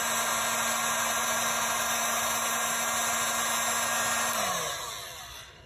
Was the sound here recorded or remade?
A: recorded